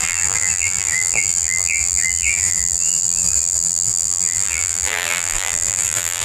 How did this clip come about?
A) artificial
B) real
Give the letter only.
A